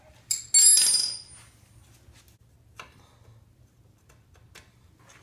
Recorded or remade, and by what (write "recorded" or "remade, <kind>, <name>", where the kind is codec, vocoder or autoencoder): recorded